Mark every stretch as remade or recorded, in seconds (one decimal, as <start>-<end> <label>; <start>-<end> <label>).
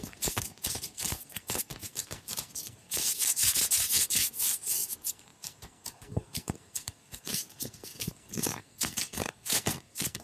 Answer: 0.0-10.2 remade